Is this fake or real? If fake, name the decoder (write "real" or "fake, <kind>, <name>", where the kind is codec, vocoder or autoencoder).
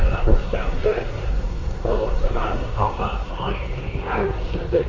fake, codec, SNAC